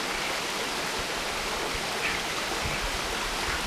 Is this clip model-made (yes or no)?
no